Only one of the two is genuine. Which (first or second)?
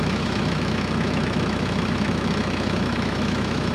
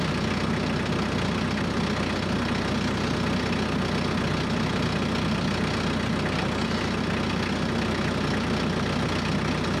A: second